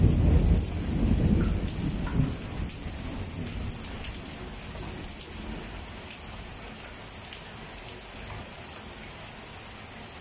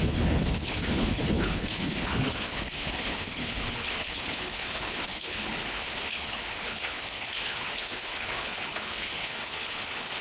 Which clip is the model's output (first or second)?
second